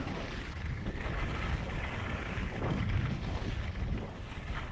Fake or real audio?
fake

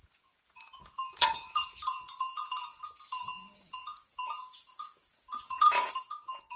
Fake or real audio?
fake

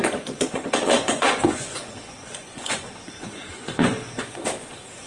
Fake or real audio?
fake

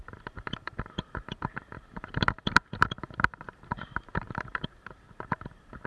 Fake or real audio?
fake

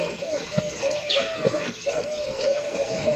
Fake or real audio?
fake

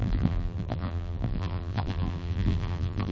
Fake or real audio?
fake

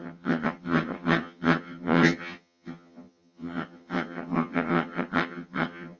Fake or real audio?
fake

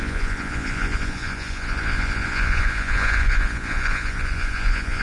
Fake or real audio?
fake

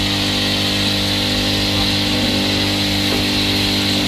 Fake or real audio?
real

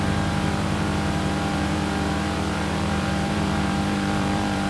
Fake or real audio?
fake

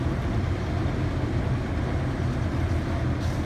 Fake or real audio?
real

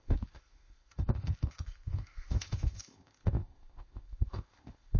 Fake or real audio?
fake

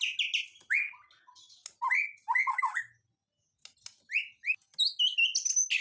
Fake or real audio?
real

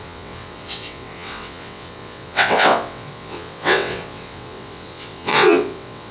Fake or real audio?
fake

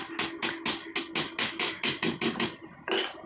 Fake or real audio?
real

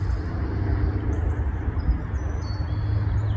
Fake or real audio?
real